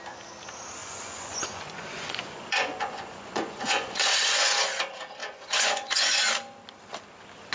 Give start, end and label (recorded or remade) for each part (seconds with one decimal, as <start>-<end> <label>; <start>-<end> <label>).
0.0-0.8 recorded; 0.8-4.8 remade; 4.8-5.2 recorded; 5.2-6.2 remade; 6.2-7.5 recorded

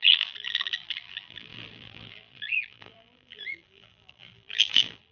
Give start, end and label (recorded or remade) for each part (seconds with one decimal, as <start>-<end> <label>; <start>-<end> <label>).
0.0-5.1 remade

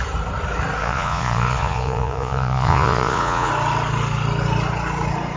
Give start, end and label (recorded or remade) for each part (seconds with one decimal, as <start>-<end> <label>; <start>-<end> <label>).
0.0-0.8 recorded; 0.8-3.5 remade; 3.5-5.4 recorded

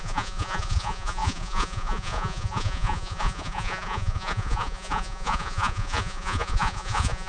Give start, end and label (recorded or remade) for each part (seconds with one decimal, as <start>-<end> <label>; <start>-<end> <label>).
0.0-7.3 remade